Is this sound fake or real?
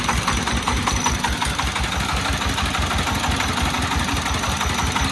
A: real